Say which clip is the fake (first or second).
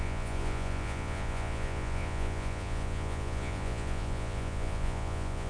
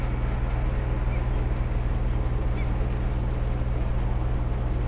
first